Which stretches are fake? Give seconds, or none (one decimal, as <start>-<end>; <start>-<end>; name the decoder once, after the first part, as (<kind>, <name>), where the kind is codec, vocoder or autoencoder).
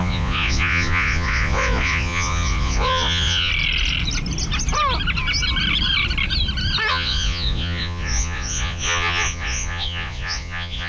0.0-3.5 (vocoder, Vocos); 6.9-10.9